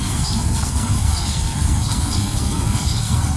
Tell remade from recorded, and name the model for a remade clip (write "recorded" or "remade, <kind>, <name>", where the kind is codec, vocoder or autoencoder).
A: remade, codec, SNAC